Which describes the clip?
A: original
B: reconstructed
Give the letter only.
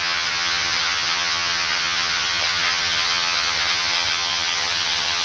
B